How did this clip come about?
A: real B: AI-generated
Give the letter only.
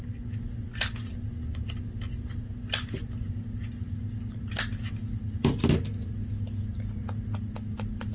A